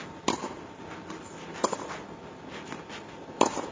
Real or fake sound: real